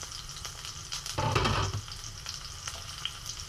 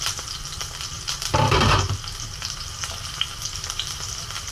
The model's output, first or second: second